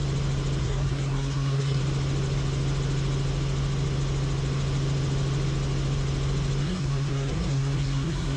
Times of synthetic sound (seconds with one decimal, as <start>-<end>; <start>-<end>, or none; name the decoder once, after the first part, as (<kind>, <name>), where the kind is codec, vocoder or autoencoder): 0.6-1.8 (codec, SNAC); 6.6-8.4